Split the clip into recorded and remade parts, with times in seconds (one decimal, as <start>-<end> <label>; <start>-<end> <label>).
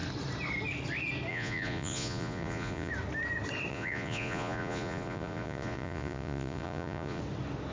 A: 0.0-1.3 recorded; 1.3-2.9 remade; 2.9-3.7 recorded; 3.7-7.2 remade; 7.2-7.7 recorded